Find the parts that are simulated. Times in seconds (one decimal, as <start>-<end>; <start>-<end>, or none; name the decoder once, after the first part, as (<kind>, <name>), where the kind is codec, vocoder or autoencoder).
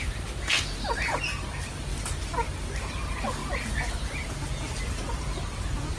none